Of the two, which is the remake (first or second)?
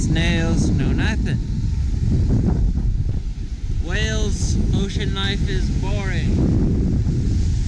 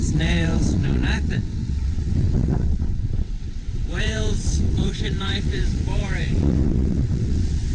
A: second